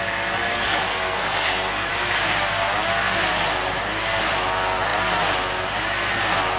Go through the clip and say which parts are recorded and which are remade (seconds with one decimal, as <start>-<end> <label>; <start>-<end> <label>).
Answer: 0.0-0.5 recorded; 0.5-1.9 remade; 1.9-6.6 recorded